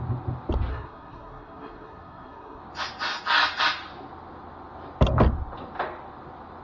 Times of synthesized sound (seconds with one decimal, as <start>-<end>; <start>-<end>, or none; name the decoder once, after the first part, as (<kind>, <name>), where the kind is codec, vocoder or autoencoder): 0.7-2.6 (codec, SNAC)